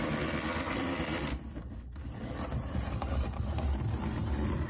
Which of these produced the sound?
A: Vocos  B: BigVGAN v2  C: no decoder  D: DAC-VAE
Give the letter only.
C